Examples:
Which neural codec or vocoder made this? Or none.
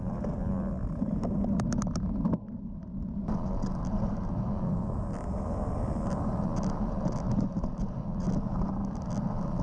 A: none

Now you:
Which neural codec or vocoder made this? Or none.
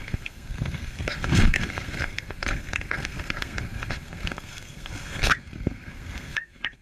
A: codec, SNAC